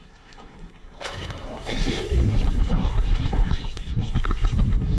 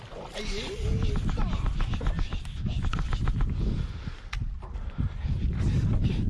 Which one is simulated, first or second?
first